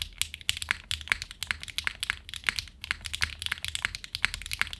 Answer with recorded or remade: recorded